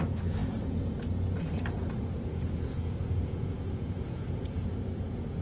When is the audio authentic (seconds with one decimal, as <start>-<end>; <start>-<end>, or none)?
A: none